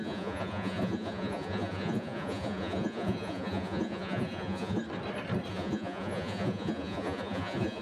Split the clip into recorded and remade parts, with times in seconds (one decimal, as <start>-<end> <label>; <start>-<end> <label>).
0.0-4.8 remade; 4.8-5.5 recorded; 5.5-7.8 remade